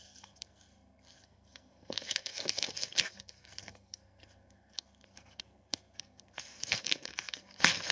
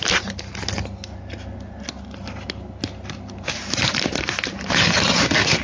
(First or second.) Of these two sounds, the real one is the second